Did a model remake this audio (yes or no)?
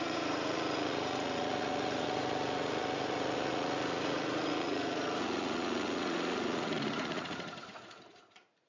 yes